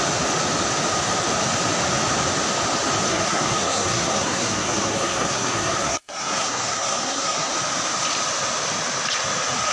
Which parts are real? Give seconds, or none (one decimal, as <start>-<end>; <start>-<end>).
0.0-3.1; 7.5-9.7